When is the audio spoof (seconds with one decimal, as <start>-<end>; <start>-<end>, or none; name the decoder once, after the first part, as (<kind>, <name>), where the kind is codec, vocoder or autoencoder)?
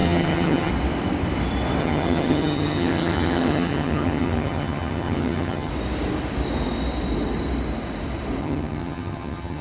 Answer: 0.0-0.7 (vocoder, HiFi-GAN); 1.8-5.7; 8.4-9.6